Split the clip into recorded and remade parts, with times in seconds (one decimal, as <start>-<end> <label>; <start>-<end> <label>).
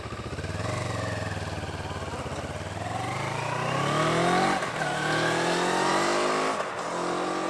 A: 0.0-7.5 recorded